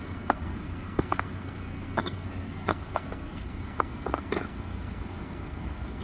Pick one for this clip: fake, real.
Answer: fake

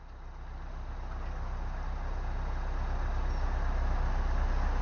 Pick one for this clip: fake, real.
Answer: real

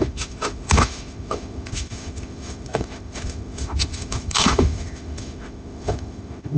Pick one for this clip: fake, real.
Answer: fake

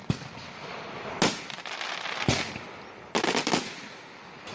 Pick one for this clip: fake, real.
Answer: real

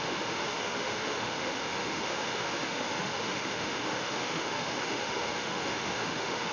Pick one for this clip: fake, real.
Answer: fake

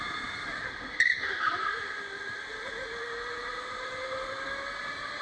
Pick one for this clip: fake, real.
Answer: real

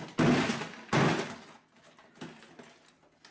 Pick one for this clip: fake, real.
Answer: real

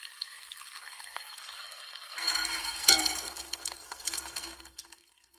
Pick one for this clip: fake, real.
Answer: fake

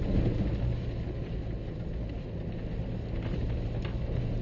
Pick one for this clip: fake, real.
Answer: real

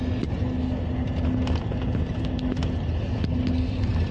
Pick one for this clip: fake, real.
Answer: real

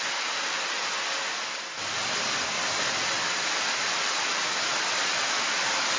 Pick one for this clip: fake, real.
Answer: real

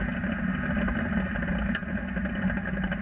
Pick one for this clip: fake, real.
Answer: real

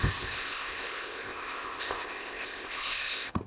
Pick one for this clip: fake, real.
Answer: fake